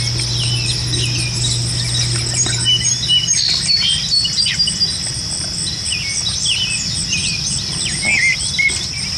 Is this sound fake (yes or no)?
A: no